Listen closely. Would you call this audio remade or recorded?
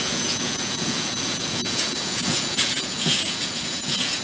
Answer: remade